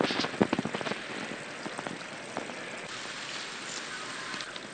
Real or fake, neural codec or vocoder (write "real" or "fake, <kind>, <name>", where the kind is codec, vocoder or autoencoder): real